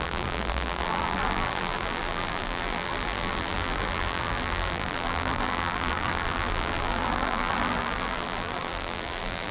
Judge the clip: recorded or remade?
remade